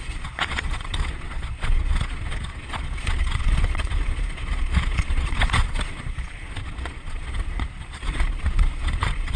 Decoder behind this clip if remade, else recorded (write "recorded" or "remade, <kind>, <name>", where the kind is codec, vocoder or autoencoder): remade, vocoder, Vocos